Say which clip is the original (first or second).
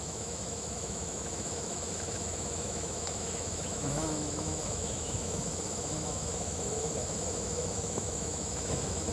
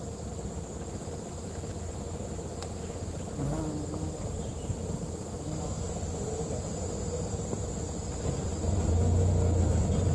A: second